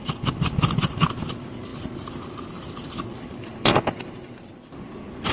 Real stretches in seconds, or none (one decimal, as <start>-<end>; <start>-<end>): 0.0-5.3